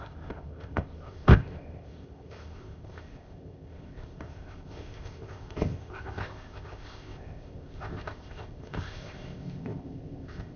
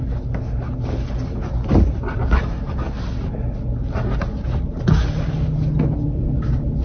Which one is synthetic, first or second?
first